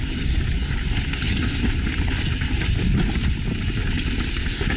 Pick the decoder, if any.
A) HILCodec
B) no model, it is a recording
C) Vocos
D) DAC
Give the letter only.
B